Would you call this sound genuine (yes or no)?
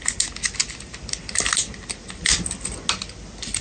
yes